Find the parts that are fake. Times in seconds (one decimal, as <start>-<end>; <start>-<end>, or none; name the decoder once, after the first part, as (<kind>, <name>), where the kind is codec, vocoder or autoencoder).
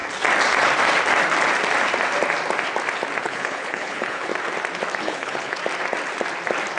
3.2-4.3 (codec, HILCodec); 5.0-5.6